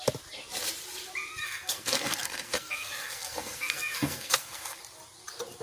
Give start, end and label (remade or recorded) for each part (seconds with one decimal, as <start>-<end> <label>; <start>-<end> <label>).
0.0-1.4 recorded; 1.4-4.8 remade; 4.8-5.6 recorded